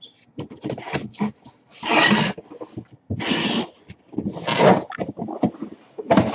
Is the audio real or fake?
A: real